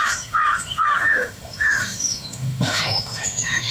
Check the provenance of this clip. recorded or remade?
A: remade